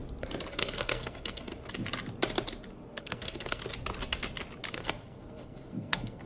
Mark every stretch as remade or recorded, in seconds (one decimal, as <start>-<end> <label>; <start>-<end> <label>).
0.0-0.5 recorded; 0.5-1.5 remade; 1.5-3.0 recorded; 3.0-3.6 remade; 3.6-4.7 recorded; 4.7-6.3 remade